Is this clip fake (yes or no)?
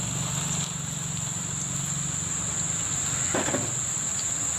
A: no